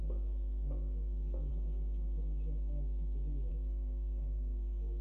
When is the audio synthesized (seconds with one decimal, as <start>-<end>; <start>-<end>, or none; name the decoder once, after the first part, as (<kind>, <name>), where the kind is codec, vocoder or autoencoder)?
0.0-1.5 (codec, SNAC); 3.5-5.0